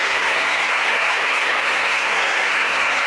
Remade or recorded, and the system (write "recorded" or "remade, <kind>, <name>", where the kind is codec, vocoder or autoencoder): remade, codec, SNAC